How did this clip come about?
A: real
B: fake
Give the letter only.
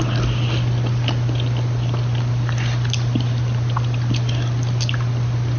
A